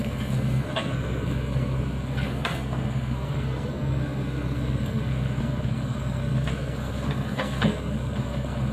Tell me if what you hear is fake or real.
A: fake